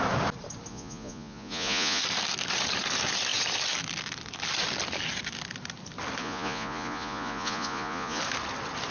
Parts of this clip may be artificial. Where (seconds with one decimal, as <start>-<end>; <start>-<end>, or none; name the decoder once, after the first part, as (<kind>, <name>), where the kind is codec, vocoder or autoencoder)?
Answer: 0.7-2.0 (vocoder, Vocos); 6.2-8.2